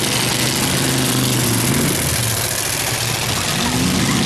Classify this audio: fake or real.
real